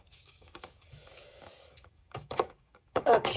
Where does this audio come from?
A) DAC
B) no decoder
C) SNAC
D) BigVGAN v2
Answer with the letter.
A